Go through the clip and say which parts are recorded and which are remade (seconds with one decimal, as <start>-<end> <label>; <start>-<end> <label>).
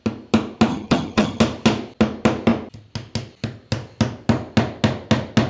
0.0-0.7 recorded; 0.7-1.4 remade; 1.4-5.5 recorded